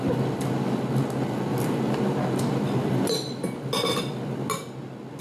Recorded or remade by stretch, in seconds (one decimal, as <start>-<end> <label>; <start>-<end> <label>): 0.0-5.2 recorded